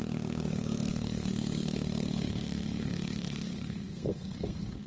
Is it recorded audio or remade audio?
remade